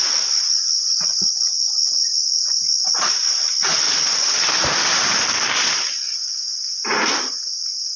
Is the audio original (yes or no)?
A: yes